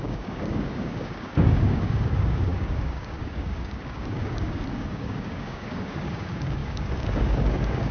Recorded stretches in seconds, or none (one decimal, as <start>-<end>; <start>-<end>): none